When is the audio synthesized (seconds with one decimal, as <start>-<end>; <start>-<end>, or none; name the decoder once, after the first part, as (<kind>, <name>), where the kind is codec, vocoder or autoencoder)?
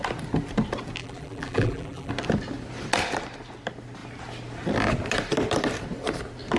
1.0-2.1 (vocoder, BigVGAN v2)